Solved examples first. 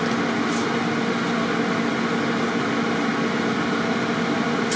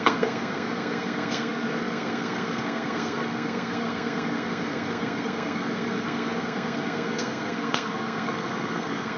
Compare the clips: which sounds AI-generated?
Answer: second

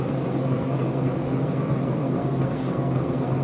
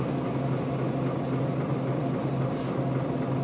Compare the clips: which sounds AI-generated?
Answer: first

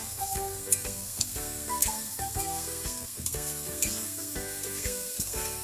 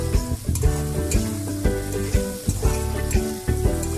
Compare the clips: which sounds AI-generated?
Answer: first